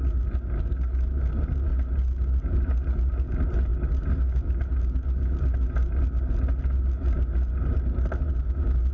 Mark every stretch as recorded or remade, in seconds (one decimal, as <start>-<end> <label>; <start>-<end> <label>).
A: 0.0-8.9 recorded